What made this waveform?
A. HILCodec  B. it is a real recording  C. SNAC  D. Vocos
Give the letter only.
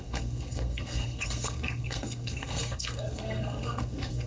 C